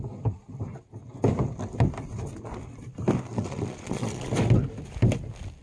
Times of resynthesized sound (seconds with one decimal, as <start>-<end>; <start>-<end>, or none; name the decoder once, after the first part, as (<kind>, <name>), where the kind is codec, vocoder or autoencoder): 3.3-4.3 (vocoder, Vocos)

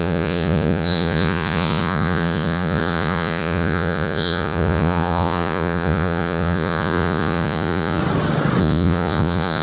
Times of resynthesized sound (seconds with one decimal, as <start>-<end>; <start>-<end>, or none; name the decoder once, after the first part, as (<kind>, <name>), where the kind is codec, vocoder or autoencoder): 0.0-8.0 (vocoder, Vocos); 8.6-9.6

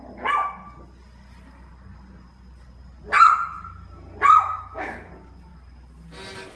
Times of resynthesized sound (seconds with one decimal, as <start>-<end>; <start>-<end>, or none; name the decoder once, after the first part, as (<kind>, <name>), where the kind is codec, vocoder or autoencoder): 4.4-5.1 (autoencoder, DAC-VAE)

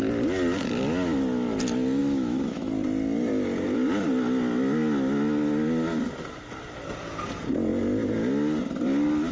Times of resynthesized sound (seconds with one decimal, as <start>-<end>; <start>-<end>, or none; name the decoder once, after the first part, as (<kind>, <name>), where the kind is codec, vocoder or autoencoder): 2.0-2.7 (autoencoder, DAC-VAE)

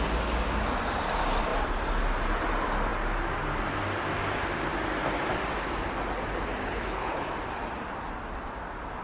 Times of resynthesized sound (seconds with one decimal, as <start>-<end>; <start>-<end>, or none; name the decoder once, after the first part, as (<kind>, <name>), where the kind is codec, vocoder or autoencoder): 6.6-7.3 (codec, HILCodec)

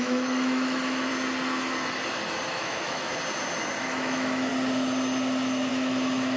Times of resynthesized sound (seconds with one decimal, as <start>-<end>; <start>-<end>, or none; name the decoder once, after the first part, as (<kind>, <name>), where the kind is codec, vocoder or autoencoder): 0.0-1.1 (autoencoder, DAC-VAE); 2.5-3.1; 3.8-4.5; 5.7-6.4